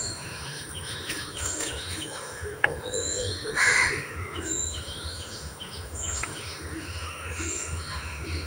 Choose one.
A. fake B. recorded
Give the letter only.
A